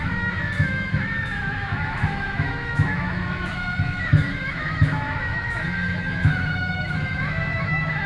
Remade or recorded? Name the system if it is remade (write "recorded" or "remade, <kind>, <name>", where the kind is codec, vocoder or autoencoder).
remade, autoencoder, DAC-VAE